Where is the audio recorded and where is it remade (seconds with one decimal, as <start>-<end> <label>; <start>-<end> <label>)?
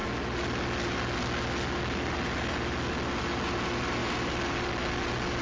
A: 0.0-5.4 recorded